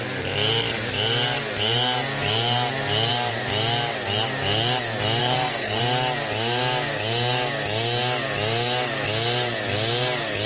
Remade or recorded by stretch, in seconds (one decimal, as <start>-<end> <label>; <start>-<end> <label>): 0.0-5.2 recorded; 5.2-5.8 remade; 5.8-10.5 recorded